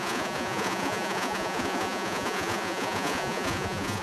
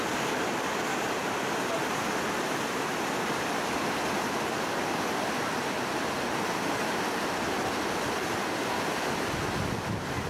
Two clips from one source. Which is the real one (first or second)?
second